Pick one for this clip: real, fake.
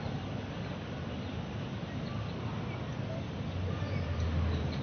real